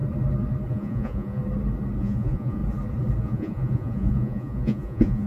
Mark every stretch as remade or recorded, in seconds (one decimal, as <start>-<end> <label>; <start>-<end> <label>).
0.0-0.7 recorded; 0.7-1.4 remade; 1.4-2.0 recorded; 2.0-2.6 remade; 2.6-3.2 recorded; 3.2-5.3 remade